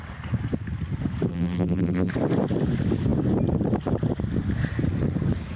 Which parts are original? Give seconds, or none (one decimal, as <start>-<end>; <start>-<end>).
0.0-1.3; 2.1-5.6

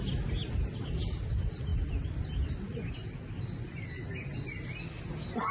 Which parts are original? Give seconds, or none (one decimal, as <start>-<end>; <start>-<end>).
0.0-5.5

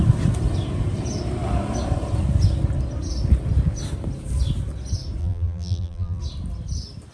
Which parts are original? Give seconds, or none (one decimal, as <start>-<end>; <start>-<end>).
0.0-5.2; 6.2-7.1